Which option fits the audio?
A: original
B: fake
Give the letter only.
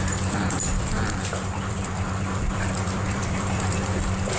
B